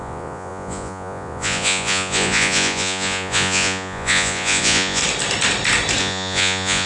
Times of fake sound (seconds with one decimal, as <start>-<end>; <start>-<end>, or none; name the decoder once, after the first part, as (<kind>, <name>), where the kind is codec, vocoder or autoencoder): 0.0-5.0 (vocoder, Vocos); 6.0-6.9